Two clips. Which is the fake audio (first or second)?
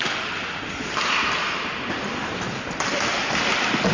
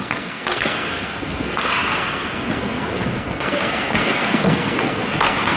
second